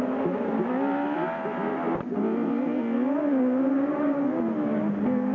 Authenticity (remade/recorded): recorded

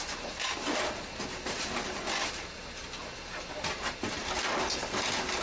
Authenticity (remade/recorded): recorded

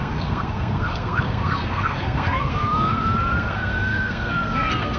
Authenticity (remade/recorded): remade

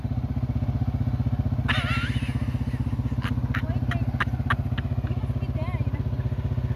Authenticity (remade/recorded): recorded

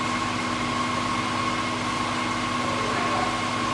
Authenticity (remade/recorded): recorded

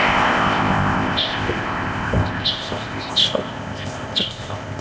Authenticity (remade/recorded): remade